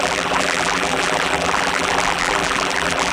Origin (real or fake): fake